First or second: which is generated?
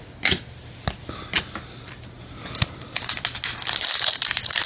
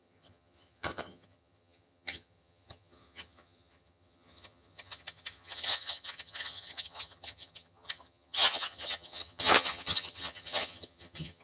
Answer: second